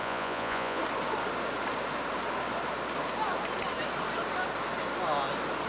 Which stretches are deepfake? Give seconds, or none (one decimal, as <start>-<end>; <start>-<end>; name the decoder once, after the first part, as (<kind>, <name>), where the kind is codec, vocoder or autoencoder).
0.0-0.8 (vocoder, Vocos)